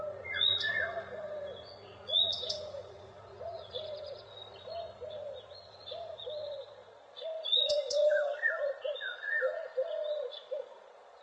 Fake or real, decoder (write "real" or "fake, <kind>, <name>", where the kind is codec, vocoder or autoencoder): fake, vocoder, Vocos